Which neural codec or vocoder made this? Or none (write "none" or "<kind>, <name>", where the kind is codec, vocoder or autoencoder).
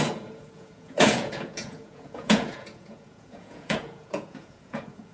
vocoder, Vocos